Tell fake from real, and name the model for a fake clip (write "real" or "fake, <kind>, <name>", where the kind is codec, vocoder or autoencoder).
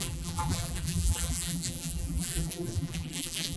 fake, vocoder, BigVGAN v2